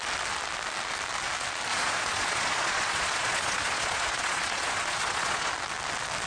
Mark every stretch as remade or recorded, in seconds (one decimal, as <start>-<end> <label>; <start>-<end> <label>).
0.0-1.7 recorded; 1.7-5.5 remade; 5.5-6.3 recorded